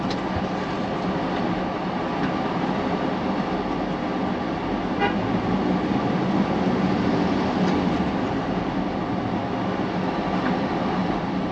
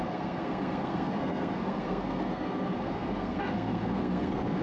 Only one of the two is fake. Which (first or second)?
second